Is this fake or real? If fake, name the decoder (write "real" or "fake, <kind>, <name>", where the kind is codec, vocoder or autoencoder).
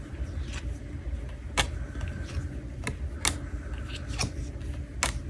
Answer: real